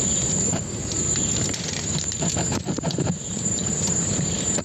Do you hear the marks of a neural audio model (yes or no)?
yes